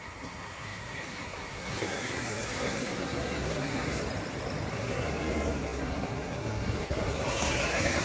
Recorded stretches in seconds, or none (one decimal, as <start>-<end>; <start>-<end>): 4.0-4.7